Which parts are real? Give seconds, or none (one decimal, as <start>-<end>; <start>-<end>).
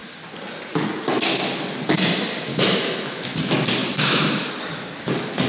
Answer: 0.0-2.5; 3.3-3.8; 4.5-5.5